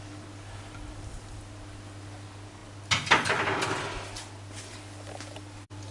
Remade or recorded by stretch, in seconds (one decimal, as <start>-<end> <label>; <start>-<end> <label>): 0.0-5.9 recorded